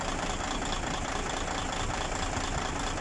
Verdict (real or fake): real